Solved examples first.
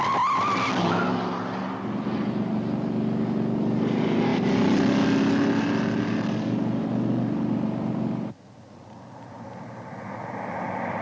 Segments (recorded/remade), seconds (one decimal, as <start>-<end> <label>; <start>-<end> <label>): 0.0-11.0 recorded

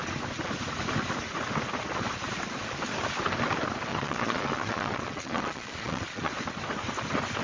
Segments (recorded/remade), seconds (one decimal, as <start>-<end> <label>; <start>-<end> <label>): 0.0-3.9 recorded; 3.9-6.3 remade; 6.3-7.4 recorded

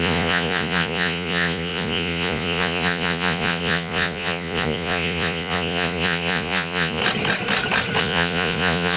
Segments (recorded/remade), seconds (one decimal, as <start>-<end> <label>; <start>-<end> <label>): 0.0-7.0 remade; 7.0-8.0 recorded; 8.0-9.0 remade

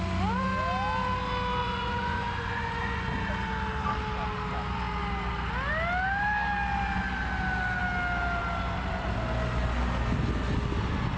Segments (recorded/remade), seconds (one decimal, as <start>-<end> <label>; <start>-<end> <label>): 0.0-1.6 recorded; 1.6-3.1 remade; 3.1-11.2 recorded

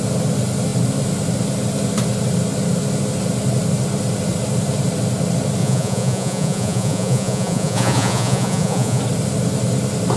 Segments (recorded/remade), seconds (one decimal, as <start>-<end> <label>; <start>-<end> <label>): 0.0-5.6 recorded; 5.6-9.0 remade; 9.0-10.2 recorded